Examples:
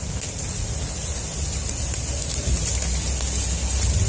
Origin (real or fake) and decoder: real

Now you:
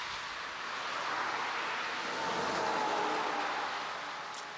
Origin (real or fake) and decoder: real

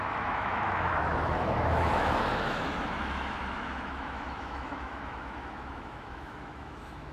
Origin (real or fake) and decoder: fake, autoencoder, DAC-VAE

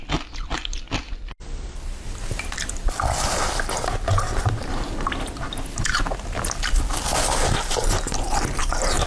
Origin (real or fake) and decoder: real